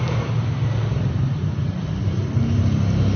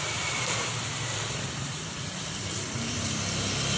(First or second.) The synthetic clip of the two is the second